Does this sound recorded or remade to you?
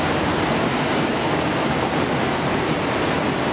recorded